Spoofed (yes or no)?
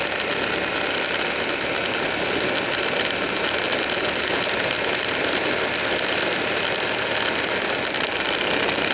no